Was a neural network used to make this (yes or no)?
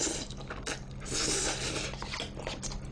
no